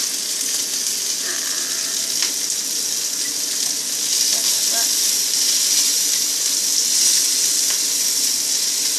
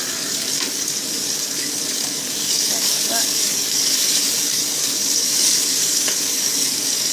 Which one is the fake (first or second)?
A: second